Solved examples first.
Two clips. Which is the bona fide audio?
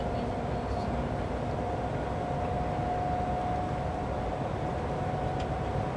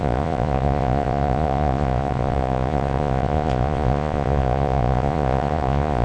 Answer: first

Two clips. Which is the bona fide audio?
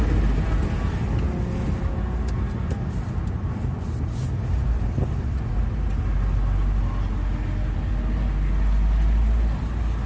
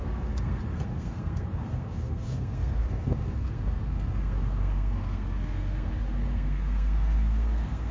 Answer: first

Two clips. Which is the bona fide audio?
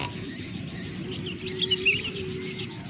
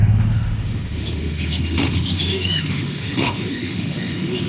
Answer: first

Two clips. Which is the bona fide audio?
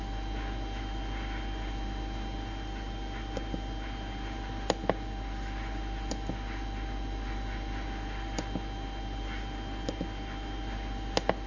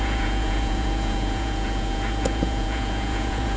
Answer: first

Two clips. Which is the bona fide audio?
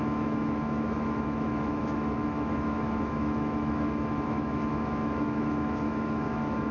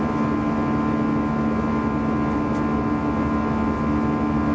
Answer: second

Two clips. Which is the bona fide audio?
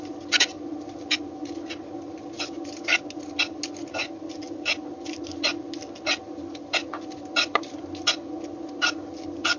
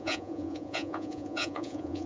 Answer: first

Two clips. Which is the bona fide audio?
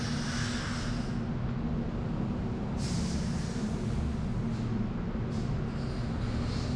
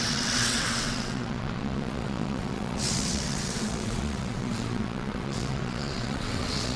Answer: first